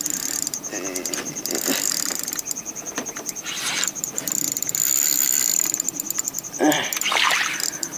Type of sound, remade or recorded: remade